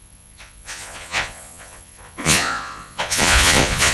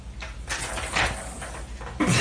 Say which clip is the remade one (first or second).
first